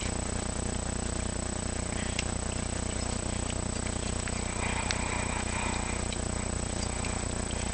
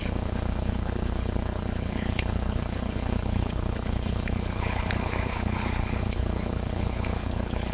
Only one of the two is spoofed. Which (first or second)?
second